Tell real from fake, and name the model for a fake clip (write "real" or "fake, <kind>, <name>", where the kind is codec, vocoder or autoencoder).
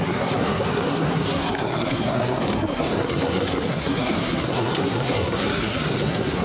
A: fake, codec, SNAC